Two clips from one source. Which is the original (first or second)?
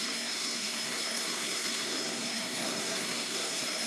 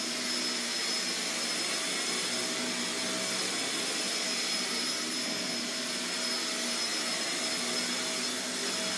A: second